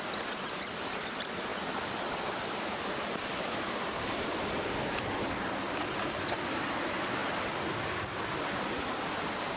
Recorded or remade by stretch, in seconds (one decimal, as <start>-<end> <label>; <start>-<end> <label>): 0.0-1.5 recorded; 1.5-4.7 remade; 4.7-7.2 recorded; 7.2-9.6 remade